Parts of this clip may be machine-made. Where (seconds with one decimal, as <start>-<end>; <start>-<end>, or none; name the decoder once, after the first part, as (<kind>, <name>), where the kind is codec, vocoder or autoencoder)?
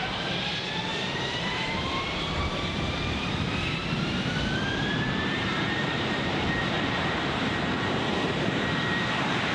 0.0-9.5 (vocoder, BigVGAN v2)